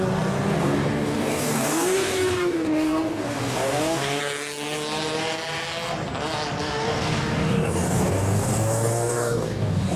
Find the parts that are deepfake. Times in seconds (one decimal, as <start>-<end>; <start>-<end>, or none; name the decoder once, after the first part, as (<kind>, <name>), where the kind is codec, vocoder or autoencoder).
0.6-4.2 (codec, DAC); 6.6-10.0